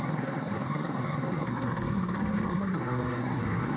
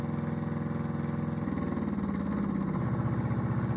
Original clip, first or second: second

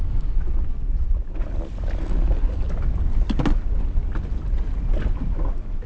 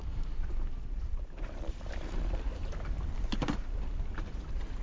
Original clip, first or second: first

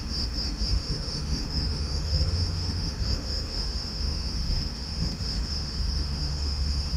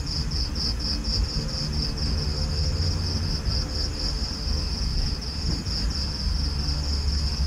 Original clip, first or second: second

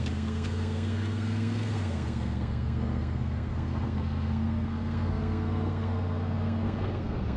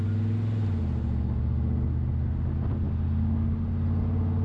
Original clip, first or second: second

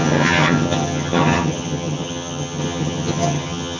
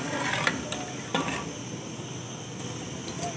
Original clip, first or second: second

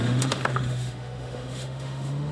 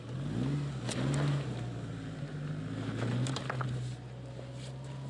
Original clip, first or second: second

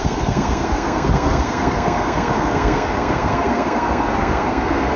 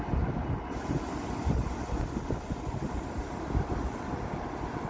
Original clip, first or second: second